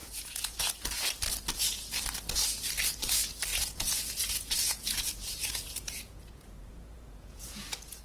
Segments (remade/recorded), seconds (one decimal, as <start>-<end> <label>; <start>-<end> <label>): 0.0-0.7 remade; 0.7-3.5 recorded; 3.5-8.0 remade